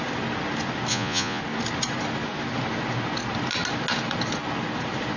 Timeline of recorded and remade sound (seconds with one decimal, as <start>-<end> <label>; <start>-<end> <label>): 0.0-0.9 recorded; 0.9-1.4 remade; 1.4-5.2 recorded